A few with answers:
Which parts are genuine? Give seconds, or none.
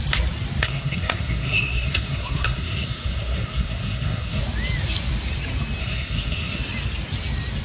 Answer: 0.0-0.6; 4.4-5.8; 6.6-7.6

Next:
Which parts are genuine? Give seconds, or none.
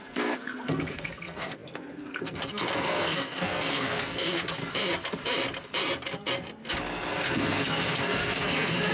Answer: 4.6-7.1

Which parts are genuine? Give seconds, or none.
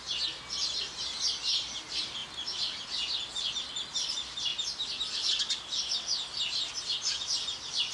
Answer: 0.0-7.9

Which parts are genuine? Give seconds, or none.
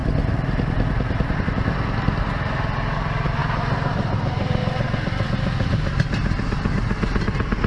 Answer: 0.0-7.7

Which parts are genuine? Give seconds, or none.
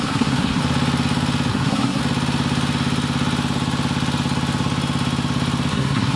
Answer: 0.6-1.5; 2.0-5.7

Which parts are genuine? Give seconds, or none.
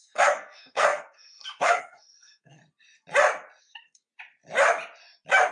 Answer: 2.6-3.6; 4.1-5.5